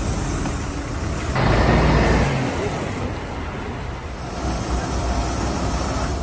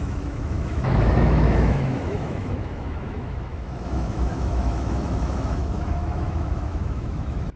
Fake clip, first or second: second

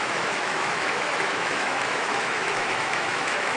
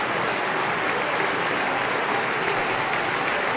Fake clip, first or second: first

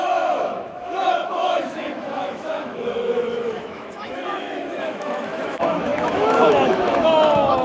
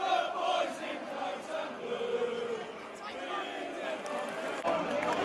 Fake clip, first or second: first